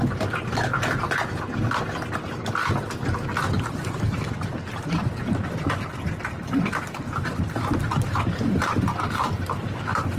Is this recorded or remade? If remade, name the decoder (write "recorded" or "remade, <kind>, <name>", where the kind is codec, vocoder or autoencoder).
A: recorded